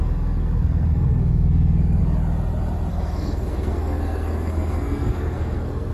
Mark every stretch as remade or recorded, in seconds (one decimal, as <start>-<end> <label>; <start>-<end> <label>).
0.0-2.0 remade; 2.0-2.9 recorded; 2.9-5.9 remade